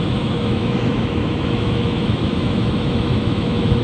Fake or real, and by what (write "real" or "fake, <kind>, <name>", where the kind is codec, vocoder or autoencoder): fake, autoencoder, DAC-VAE